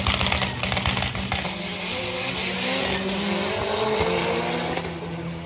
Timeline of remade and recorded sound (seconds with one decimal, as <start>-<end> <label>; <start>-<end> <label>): 0.0-5.5 recorded